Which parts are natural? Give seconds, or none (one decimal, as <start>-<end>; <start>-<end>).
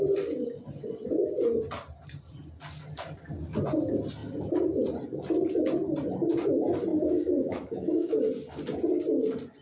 0.0-6.9; 8.2-9.6